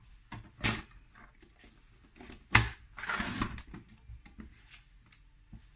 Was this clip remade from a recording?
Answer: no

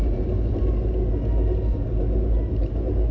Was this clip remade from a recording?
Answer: no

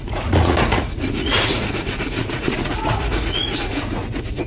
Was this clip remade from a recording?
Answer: yes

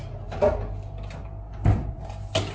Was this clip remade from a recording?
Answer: no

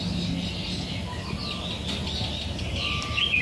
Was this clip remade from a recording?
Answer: no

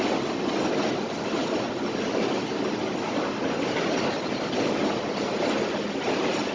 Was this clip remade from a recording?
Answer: no